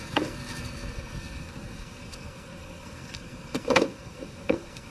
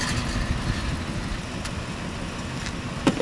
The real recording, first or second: second